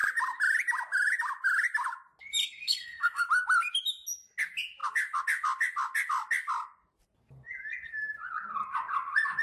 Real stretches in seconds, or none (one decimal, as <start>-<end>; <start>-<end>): 0.0-2.4; 3.3-9.4